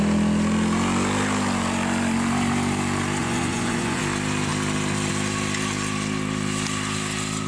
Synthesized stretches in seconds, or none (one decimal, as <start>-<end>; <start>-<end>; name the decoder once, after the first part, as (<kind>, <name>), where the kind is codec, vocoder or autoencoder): 3.2-4.0 (vocoder, Vocos)